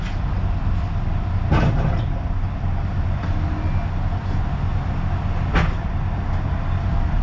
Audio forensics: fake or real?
real